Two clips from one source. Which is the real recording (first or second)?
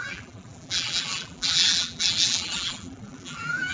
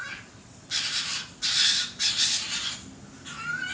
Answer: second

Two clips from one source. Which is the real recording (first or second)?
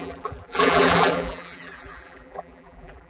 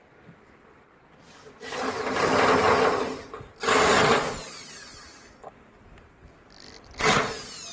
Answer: second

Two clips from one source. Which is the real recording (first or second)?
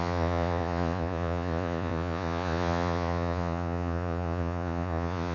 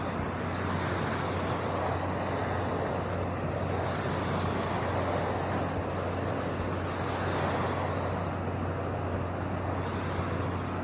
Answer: second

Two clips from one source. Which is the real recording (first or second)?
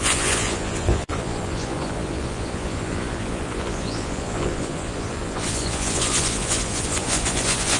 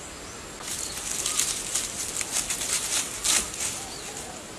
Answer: second